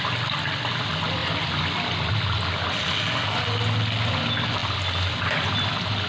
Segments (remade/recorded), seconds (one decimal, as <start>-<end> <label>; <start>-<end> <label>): 0.0-6.1 recorded